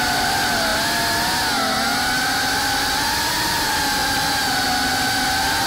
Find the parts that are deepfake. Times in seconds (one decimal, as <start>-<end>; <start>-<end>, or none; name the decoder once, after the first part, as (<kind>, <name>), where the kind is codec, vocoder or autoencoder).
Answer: 0.0-0.7 (vocoder, BigVGAN v2); 2.6-5.7